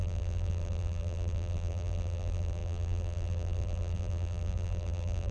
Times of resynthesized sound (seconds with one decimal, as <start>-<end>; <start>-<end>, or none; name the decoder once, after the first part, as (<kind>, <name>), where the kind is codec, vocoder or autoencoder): 0.0-5.3 (vocoder, BigVGAN v2)